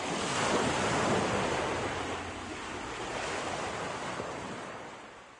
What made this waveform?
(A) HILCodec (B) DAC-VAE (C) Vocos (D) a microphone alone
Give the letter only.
D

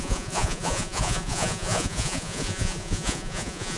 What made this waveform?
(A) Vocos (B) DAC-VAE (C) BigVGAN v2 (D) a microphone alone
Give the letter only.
A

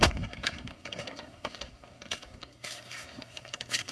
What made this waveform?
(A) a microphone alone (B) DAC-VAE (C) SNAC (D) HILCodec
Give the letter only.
C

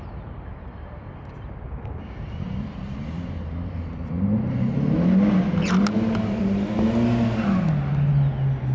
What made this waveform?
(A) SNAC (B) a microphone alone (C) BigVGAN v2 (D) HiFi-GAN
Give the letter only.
B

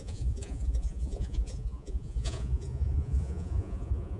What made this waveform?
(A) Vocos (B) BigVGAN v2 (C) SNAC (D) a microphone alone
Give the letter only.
A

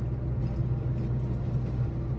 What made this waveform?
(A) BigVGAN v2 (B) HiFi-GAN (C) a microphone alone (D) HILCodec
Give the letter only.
C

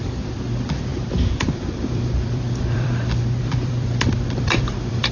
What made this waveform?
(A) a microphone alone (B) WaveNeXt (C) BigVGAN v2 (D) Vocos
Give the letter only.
C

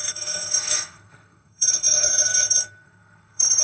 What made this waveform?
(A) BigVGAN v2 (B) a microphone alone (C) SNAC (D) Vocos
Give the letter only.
C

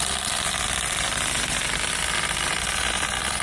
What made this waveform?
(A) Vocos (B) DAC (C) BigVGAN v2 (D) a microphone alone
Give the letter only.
D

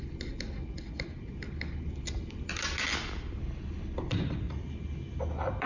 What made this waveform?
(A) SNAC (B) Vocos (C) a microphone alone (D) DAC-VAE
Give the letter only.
C